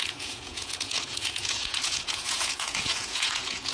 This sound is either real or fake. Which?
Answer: fake